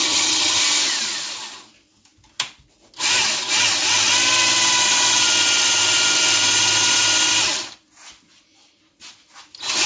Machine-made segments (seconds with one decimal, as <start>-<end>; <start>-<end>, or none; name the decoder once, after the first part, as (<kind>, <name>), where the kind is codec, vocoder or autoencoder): 0.0-0.6 (vocoder, HiFi-GAN)